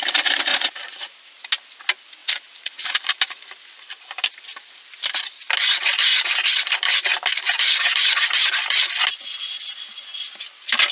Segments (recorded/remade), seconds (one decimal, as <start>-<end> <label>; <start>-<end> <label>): 0.0-0.5 recorded; 0.5-1.4 remade; 1.4-2.2 recorded; 2.2-3.2 remade; 3.2-10.9 recorded